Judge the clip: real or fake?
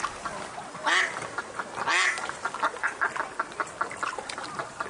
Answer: real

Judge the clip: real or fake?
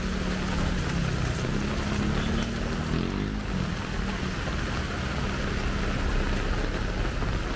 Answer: real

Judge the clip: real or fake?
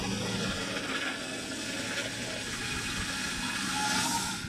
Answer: real